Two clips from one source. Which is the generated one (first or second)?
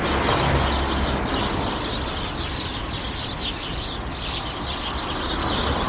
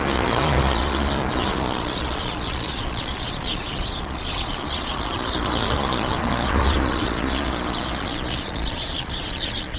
second